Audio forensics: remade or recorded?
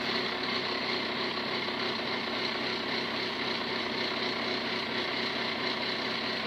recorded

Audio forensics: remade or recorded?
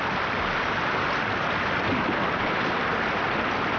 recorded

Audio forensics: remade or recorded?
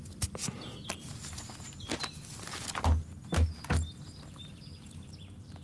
recorded